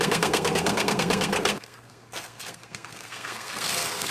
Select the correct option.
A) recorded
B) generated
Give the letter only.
B